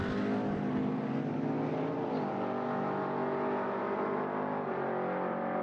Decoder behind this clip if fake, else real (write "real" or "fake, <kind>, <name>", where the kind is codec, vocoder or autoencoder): real